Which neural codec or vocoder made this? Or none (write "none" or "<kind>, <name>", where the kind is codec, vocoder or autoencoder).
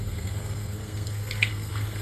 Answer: codec, SNAC